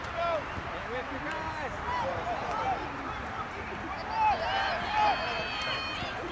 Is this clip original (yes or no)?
yes